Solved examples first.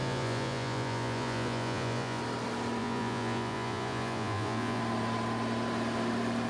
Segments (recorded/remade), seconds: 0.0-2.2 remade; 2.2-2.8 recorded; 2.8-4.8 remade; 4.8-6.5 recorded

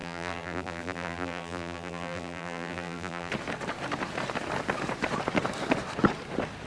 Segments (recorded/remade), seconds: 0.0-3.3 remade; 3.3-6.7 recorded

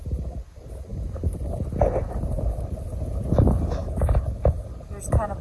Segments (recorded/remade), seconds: 0.0-3.8 recorded; 3.8-4.9 remade; 4.9-5.4 recorded

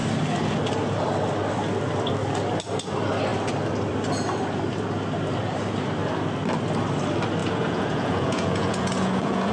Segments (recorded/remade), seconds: 0.0-7.4 recorded; 7.4-9.5 remade

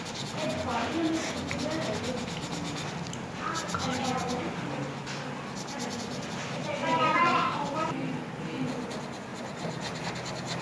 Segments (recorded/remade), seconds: 0.0-10.6 recorded